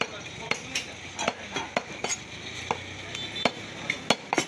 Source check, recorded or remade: recorded